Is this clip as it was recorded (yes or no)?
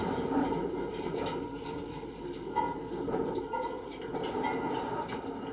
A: yes